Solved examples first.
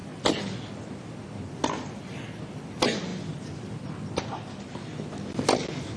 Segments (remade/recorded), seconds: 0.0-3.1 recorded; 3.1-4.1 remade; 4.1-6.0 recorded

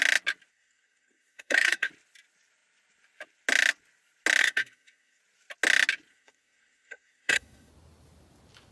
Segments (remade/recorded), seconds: 0.0-0.5 recorded; 0.5-1.9 remade; 1.9-4.4 recorded; 4.4-5.2 remade; 5.2-6.1 recorded; 6.1-7.7 remade; 7.7-8.7 recorded